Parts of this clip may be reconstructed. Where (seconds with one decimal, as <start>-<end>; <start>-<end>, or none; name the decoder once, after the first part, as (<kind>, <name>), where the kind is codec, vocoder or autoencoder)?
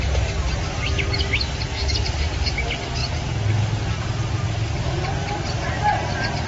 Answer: none